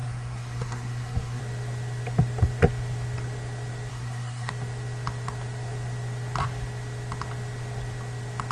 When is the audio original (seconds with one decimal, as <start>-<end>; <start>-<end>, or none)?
1.4-3.9; 4.5-8.5

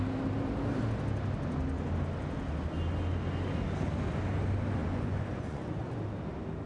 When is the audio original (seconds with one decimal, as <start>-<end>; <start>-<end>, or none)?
0.0-4.8; 6.0-6.7

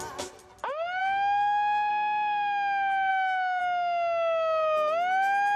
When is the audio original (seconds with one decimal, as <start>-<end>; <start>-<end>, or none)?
0.0-1.0; 1.9-3.1; 3.6-5.6